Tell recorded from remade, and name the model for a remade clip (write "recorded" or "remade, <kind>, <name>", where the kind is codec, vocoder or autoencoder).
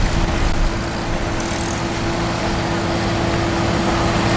recorded